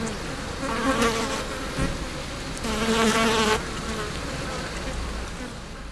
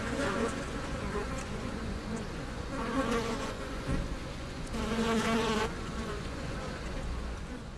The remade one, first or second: second